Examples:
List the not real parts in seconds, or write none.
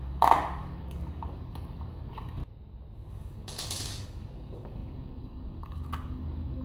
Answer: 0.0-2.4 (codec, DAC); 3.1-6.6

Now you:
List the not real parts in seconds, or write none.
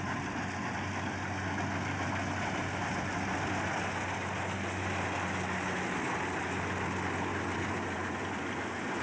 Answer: 7.3-9.0 (vocoder, BigVGAN v2)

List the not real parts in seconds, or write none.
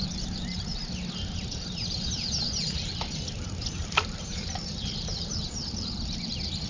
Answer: 0.0-0.8 (vocoder, BigVGAN v2); 1.4-2.8; 4.2-6.7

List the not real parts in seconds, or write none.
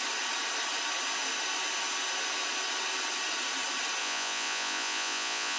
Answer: 4.0-5.6 (vocoder, Vocos)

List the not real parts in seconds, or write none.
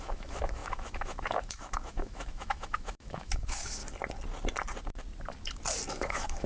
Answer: 0.0-3.8 (autoencoder, DAC-VAE); 5.9-6.5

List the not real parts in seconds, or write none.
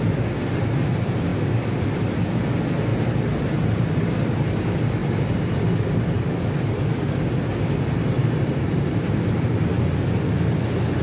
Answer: 1.3-2.0 (vocoder, BigVGAN v2); 2.9-4.1; 8.2-9.6